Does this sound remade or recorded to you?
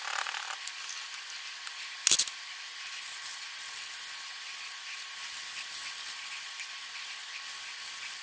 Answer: recorded